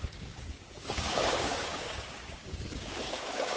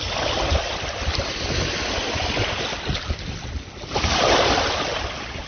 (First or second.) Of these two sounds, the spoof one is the first